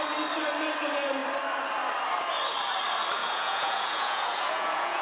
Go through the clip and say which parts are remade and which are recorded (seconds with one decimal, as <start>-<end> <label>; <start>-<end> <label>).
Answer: 0.0-3.2 recorded; 3.2-5.0 remade

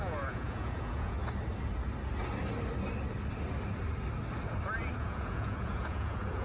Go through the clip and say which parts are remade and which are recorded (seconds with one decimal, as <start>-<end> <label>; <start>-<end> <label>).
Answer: 0.0-1.2 remade; 1.2-5.0 recorded; 5.0-6.4 remade

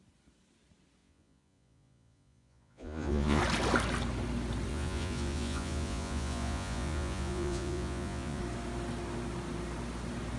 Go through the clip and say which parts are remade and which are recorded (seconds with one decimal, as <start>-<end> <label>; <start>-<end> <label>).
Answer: 0.0-1.0 recorded; 1.0-3.4 remade; 3.4-4.7 recorded; 4.7-8.4 remade; 8.4-10.4 recorded

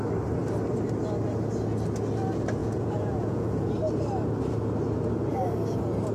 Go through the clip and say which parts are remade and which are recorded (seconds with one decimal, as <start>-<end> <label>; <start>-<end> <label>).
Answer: 0.0-2.6 recorded; 2.6-3.7 remade; 3.7-6.1 recorded